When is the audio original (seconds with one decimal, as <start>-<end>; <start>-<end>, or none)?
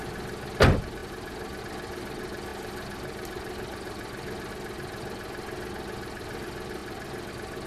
0.0-7.7